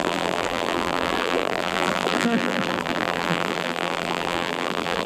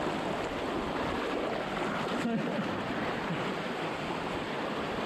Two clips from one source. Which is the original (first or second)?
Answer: second